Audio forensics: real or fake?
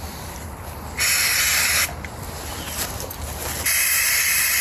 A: real